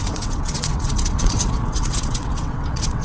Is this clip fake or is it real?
fake